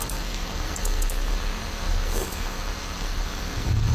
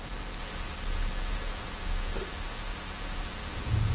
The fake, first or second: first